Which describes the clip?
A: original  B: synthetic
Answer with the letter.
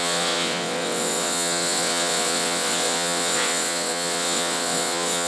B